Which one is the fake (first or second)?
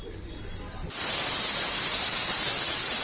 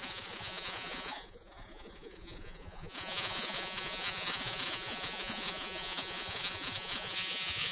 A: second